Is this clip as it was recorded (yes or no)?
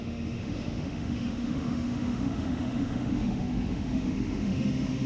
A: no